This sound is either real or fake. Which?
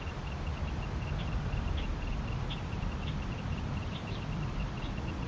real